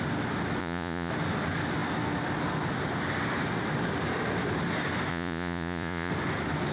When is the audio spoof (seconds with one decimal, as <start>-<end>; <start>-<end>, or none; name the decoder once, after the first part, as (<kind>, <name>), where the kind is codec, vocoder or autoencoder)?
0.6-1.1 (vocoder, Vocos); 5.1-6.1